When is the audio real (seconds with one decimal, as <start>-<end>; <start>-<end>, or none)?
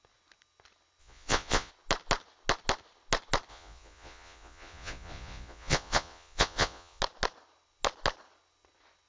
0.0-1.0; 1.7-3.5; 7.0-9.1